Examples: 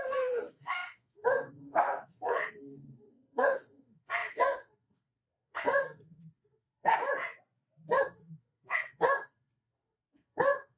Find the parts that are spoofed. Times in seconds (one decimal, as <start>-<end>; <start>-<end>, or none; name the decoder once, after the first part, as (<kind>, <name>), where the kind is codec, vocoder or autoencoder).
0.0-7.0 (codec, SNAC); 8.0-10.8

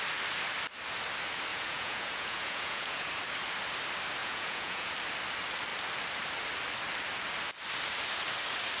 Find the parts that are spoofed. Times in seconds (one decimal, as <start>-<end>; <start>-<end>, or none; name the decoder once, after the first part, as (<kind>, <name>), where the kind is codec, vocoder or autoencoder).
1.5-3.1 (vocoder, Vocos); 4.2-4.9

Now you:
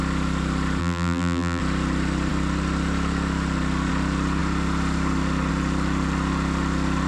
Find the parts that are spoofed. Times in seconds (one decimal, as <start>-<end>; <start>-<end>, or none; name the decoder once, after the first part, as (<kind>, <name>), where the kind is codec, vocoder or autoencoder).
0.8-1.6 (vocoder, BigVGAN v2)